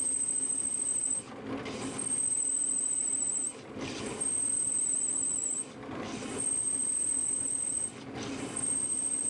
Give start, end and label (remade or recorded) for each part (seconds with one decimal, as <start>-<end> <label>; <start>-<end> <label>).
0.0-9.3 recorded